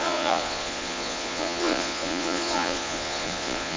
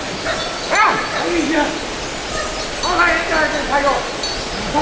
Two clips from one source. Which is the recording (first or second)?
second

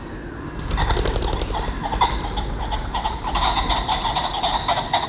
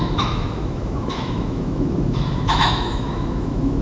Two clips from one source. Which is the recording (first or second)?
first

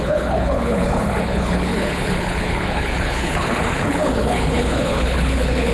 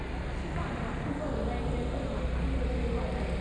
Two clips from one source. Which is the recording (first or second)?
second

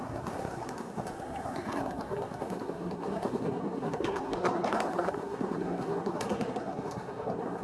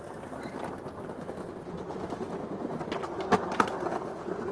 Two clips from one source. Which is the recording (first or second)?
second